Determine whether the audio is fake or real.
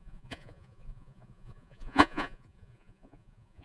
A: fake